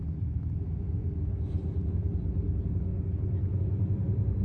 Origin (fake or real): real